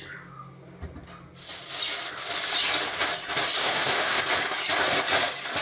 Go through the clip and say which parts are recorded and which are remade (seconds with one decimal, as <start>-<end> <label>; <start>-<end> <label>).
0.0-3.6 recorded; 3.6-4.2 remade; 4.2-5.6 recorded